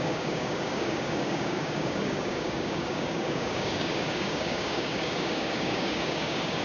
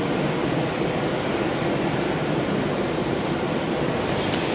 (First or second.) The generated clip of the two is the first